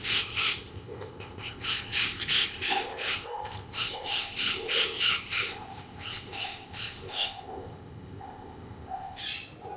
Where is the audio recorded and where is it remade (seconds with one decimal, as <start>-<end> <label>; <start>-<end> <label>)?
0.0-9.2 remade; 9.2-9.8 recorded

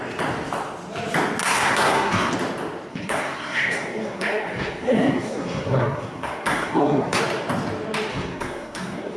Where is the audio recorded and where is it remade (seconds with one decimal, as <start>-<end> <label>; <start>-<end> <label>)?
0.0-1.4 recorded; 1.4-2.3 remade; 2.3-2.9 recorded; 2.9-7.2 remade; 7.2-8.1 recorded; 8.1-9.2 remade